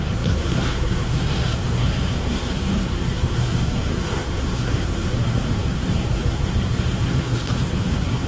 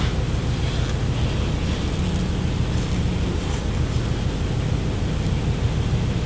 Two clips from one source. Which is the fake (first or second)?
first